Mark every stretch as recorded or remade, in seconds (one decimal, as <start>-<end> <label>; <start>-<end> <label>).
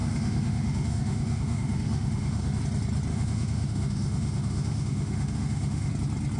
0.0-2.6 remade; 2.6-3.1 recorded; 3.1-5.9 remade; 5.9-6.4 recorded